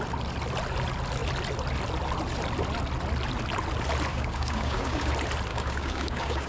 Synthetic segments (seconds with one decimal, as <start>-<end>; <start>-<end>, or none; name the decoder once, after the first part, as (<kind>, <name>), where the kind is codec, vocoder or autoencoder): 4.1-5.1 (codec, DAC); 5.5-6.5